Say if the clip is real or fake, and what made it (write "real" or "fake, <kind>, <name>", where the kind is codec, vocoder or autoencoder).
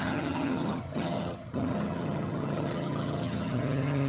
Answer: fake, vocoder, HiFi-GAN